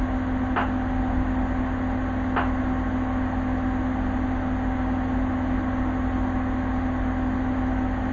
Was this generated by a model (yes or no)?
no